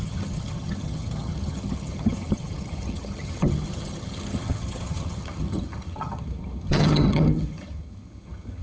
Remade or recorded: remade